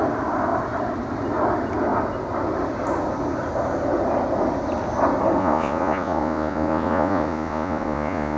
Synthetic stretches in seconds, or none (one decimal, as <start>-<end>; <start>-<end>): 5.4-8.4